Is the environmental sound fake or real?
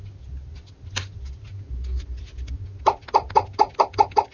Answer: real